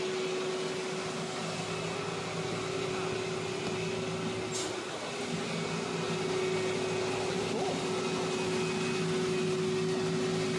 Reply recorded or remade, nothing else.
recorded